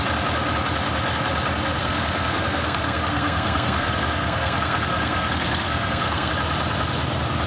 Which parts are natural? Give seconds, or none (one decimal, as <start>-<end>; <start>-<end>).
0.0-1.8; 6.3-7.5